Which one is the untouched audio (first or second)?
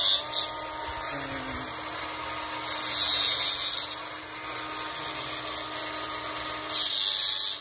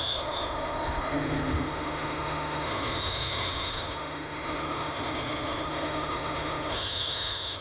first